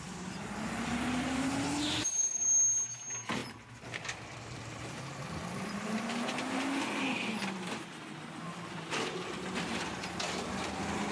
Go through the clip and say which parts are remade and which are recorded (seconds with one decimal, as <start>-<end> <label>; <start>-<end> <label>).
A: 0.0-11.1 recorded